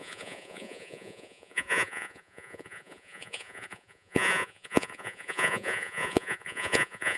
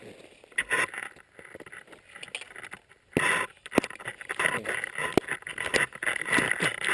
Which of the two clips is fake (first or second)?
first